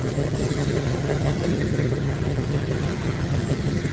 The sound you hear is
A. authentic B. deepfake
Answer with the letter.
B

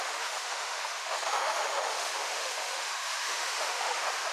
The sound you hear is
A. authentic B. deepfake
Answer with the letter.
B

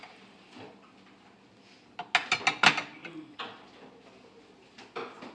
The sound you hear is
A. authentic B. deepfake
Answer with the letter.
A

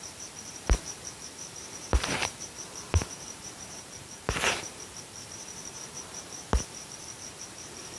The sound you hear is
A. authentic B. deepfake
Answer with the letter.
B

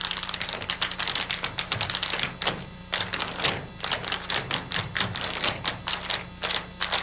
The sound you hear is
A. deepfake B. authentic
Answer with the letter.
B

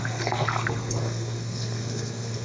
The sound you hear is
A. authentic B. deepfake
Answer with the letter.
B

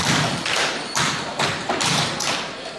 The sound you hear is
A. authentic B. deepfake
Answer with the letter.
B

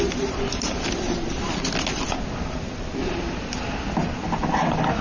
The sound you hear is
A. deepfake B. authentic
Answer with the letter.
B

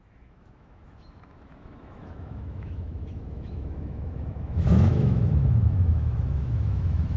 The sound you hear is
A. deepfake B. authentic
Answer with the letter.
A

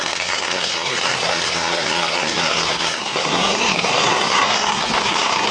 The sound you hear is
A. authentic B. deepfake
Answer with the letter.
B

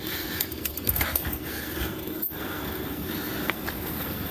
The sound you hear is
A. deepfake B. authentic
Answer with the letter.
A